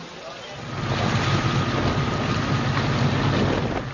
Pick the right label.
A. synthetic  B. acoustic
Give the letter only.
B